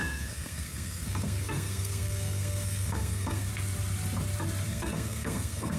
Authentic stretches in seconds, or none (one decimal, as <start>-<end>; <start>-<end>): 3.5-4.7